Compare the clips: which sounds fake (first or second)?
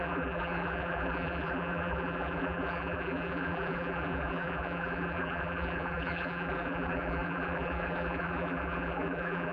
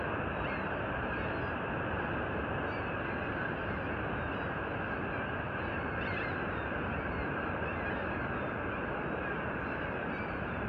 first